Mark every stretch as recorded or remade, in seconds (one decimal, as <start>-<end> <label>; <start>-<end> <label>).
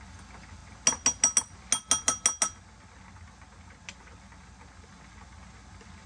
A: 0.0-6.1 recorded